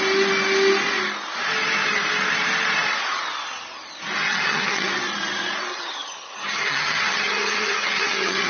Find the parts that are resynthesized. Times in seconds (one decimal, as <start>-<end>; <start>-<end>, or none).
4.3-4.9; 5.7-8.5